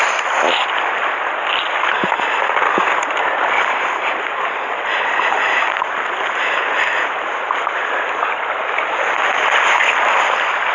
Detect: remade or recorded recorded